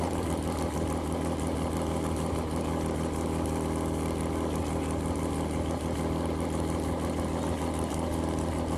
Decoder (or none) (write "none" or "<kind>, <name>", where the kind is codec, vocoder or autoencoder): none